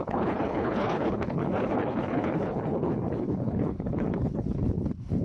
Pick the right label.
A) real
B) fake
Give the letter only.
B